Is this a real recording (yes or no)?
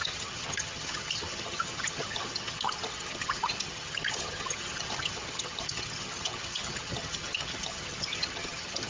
no